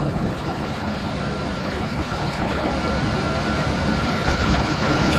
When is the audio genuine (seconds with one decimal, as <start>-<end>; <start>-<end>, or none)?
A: 1.1-1.6; 2.7-4.0